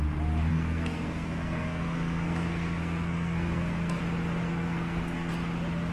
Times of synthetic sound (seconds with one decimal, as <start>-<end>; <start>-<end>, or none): 0.5-4.0; 4.4-5.3